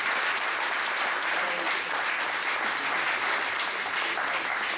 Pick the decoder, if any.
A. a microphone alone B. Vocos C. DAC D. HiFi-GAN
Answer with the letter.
A